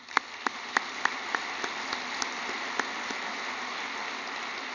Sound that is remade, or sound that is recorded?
remade